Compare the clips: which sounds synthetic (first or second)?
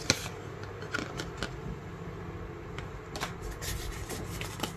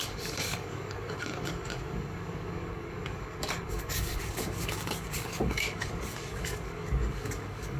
second